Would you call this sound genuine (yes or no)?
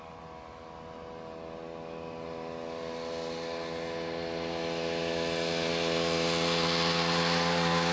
yes